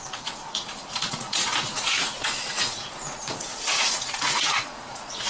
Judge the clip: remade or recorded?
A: remade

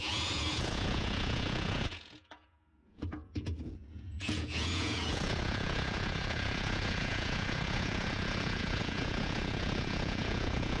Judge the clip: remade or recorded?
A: remade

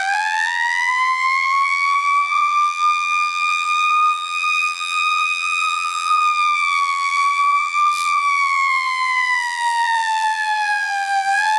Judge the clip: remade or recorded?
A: remade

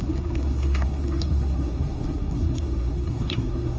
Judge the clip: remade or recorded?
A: remade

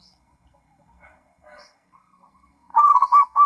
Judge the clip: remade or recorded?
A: remade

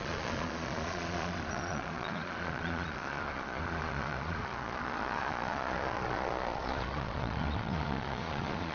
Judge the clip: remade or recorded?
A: remade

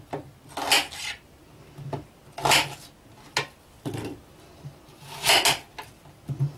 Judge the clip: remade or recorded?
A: recorded